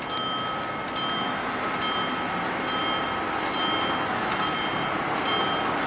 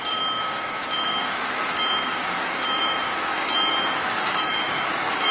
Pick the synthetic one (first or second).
second